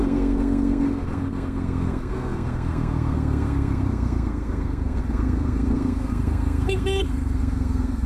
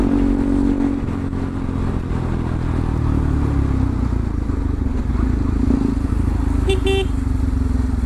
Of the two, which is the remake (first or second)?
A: first